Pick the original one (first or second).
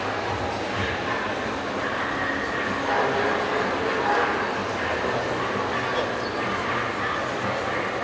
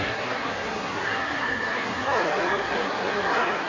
first